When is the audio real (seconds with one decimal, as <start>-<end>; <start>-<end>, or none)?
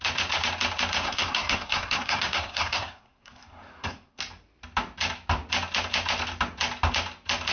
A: 0.0-1.0; 4.2-7.5